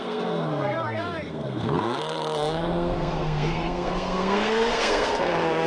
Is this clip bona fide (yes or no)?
no